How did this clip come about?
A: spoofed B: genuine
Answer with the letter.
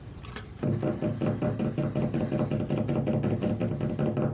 B